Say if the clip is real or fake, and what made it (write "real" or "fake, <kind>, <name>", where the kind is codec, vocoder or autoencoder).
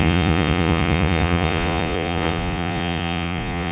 fake, vocoder, Vocos